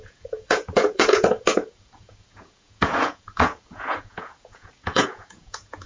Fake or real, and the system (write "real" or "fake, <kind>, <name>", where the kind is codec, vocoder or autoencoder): fake, vocoder, Vocos